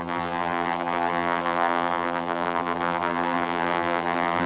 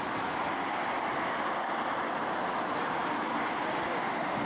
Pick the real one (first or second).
second